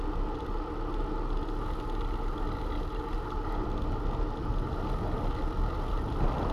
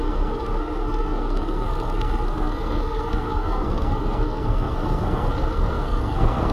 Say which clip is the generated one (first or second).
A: second